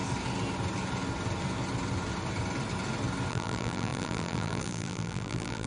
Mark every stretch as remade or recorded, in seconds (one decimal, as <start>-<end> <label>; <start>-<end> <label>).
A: 0.0-3.3 recorded; 3.3-5.7 remade